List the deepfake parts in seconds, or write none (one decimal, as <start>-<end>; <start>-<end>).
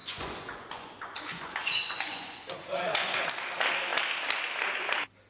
0.0-3.2